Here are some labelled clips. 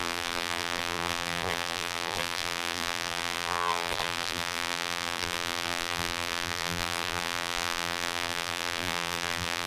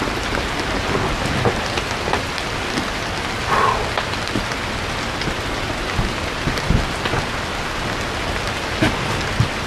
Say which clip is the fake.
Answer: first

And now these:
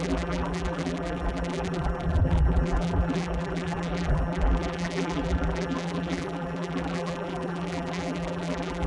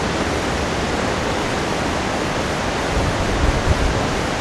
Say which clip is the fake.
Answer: first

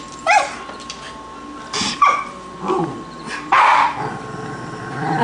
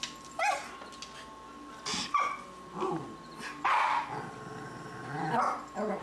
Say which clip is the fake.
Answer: first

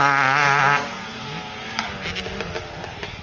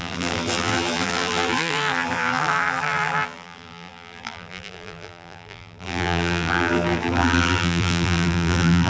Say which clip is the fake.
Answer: second